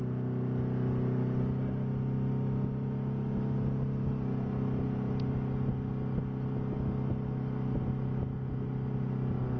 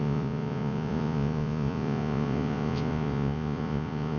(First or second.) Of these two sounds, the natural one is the first